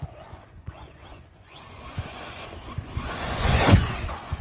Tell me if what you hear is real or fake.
fake